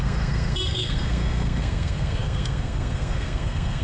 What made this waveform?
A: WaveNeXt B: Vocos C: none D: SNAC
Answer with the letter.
D